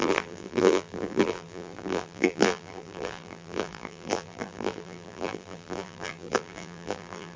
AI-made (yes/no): yes